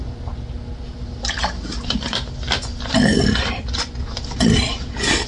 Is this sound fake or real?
real